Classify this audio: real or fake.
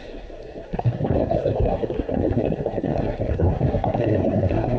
fake